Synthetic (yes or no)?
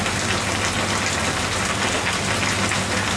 no